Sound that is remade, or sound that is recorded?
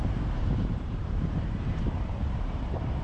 remade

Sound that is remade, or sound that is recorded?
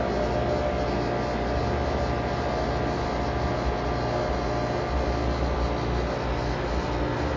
recorded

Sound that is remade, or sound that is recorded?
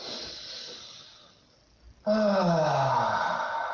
recorded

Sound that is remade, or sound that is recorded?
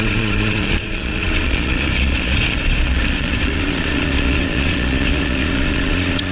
remade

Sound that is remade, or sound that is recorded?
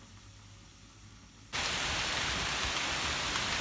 recorded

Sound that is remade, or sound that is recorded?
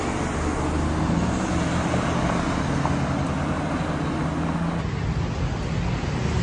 recorded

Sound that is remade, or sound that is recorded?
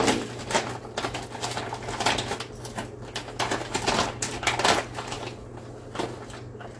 recorded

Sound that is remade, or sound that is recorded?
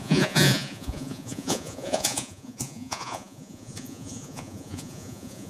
remade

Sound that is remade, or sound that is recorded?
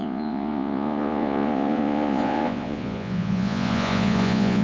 remade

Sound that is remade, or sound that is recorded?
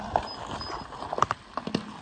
recorded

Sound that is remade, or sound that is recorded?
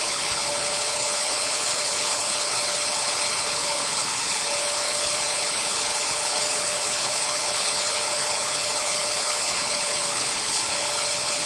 remade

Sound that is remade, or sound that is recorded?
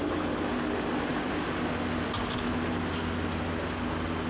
recorded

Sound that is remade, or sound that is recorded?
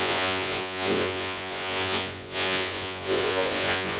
remade